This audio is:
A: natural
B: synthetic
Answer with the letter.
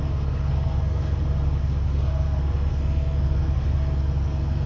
B